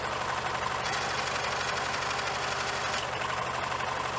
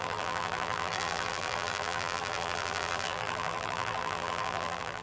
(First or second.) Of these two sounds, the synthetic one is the second